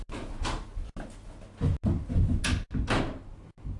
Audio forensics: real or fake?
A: real